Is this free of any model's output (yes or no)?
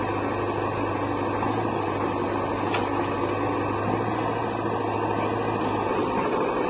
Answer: yes